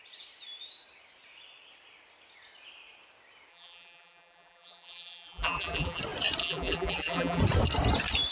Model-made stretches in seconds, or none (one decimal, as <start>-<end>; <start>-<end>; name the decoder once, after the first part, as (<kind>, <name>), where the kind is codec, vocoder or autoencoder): 3.5-6.0 (vocoder, BigVGAN v2); 6.4-7.4